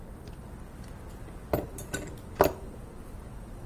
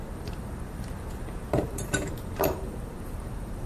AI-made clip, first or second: second